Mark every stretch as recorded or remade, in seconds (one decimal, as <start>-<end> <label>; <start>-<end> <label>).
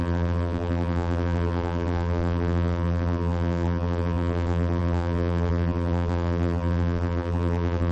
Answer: 0.0-7.9 remade